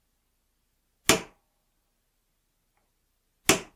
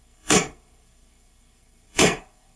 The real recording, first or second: first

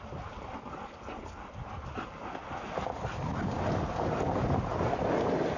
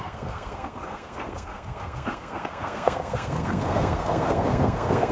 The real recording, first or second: first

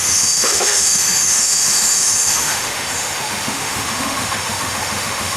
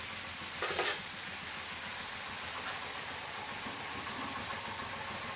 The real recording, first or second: second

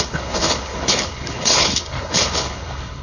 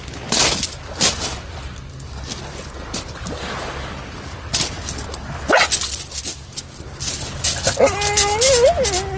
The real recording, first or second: second